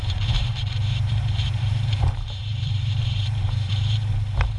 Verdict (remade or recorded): remade